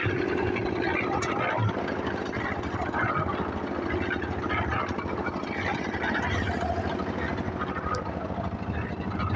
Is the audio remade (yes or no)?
no